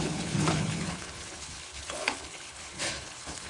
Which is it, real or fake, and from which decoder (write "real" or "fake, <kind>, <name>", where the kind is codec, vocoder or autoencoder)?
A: fake, codec, HILCodec